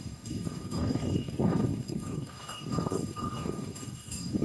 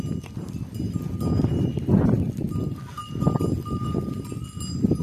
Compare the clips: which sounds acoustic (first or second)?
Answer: second